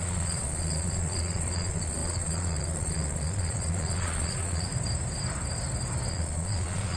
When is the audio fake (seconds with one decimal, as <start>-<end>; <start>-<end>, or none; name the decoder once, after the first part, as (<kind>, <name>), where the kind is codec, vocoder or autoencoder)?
0.0-4.7 (vocoder, Vocos); 6.1-7.0